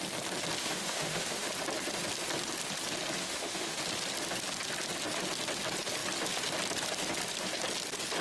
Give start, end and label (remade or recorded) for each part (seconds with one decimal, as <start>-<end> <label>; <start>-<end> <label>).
0.0-0.6 recorded; 0.6-1.5 remade; 1.5-3.2 recorded; 3.2-3.8 remade; 3.8-8.2 recorded